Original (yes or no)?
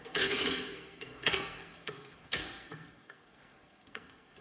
no